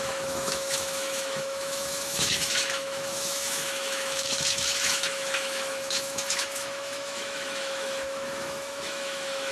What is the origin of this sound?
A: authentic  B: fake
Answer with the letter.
B